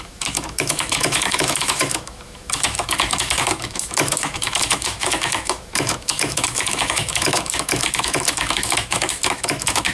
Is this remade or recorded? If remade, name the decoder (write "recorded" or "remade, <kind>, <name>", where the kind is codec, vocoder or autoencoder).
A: remade, autoencoder, DAC-VAE